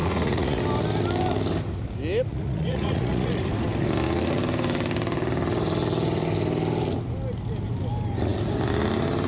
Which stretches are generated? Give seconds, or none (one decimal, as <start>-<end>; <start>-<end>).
0.0-0.6; 2.3-3.3